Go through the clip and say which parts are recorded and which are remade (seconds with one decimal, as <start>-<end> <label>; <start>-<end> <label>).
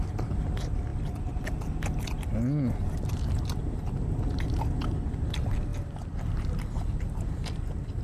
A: 0.0-8.0 recorded